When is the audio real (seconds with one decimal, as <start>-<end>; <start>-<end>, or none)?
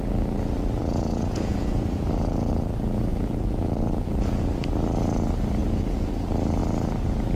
0.0-0.8; 2.5-3.1; 4.4-5.6; 6.1-7.4